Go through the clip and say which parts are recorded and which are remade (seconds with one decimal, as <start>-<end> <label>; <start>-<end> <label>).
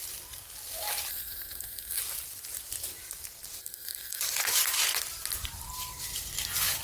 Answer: 0.0-1.1 recorded; 1.1-2.0 remade; 2.0-3.6 recorded; 3.6-4.2 remade; 4.2-6.8 recorded